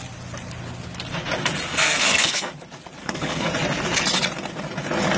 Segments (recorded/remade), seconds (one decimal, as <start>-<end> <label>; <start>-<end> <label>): 0.0-1.7 recorded; 1.7-2.5 remade; 2.5-3.0 recorded; 3.0-3.5 remade; 3.5-5.2 recorded